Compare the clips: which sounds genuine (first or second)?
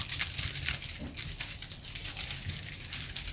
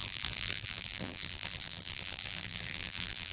first